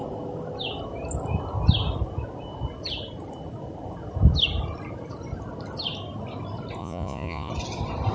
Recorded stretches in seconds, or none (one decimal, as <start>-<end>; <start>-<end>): 0.0-6.8; 7.5-8.1